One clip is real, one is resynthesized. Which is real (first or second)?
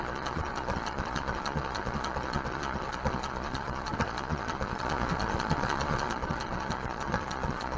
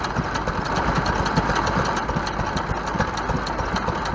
second